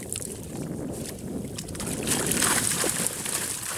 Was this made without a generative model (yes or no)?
no